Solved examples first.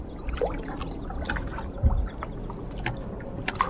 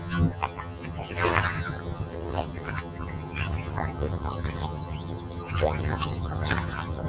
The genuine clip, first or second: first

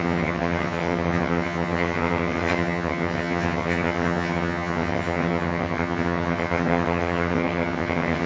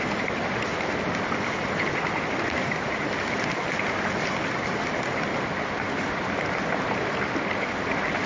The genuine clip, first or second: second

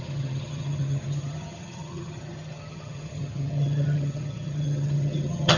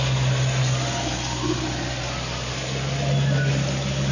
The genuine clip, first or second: second